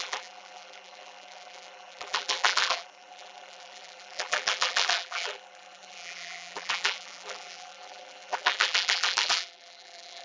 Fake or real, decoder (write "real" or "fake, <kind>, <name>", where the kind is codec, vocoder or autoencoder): fake, vocoder, BigVGAN v2